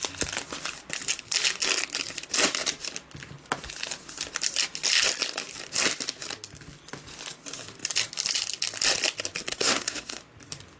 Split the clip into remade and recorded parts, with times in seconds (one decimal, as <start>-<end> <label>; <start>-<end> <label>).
0.0-9.5 recorded; 9.5-10.2 remade; 10.2-10.8 recorded